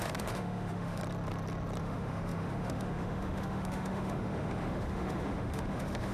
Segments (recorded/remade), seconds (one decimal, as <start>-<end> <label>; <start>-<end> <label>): 0.0-1.0 remade; 1.0-1.8 recorded; 1.8-6.1 remade